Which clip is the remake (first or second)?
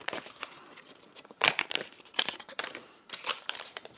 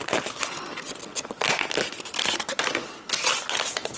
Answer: first